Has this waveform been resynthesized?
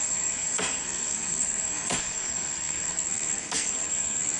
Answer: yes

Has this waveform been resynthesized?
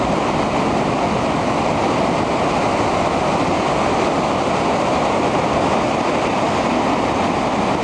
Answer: no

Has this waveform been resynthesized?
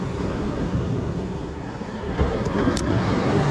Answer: yes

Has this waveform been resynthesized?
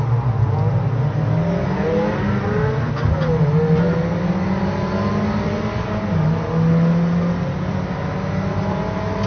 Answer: no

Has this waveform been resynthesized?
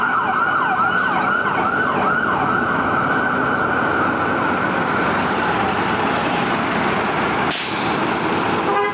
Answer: no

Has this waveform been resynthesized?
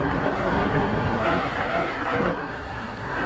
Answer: yes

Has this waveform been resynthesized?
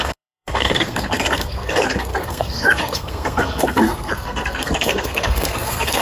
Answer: yes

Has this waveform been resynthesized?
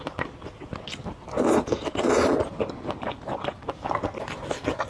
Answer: no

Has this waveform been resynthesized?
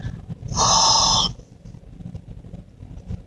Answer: no